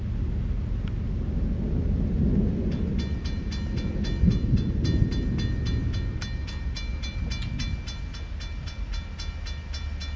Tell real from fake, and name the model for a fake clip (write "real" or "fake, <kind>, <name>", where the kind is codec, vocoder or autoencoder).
real